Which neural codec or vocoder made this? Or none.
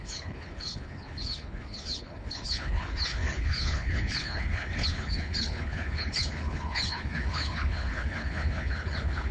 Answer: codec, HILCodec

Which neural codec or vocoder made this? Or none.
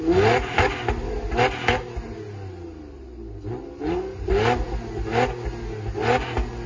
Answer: none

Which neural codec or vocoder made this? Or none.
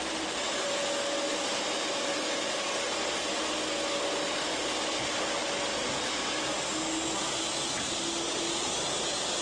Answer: none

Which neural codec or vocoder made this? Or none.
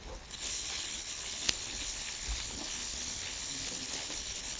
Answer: codec, HILCodec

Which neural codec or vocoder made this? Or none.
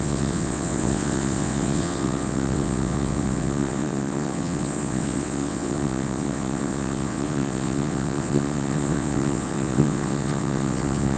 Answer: vocoder, WaveNeXt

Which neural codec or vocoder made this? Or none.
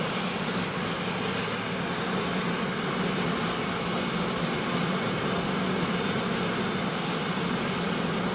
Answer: none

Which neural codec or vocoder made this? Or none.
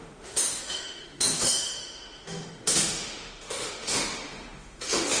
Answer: autoencoder, DAC-VAE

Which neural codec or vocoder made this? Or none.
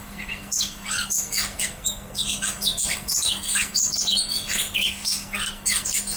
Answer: codec, SNAC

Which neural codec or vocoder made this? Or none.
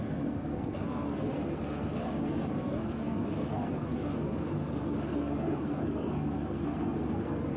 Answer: codec, SNAC